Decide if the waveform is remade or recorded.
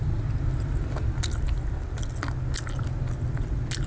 recorded